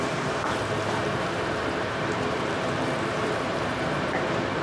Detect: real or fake fake